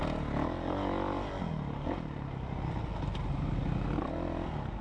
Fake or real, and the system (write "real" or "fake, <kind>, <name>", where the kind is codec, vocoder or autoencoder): real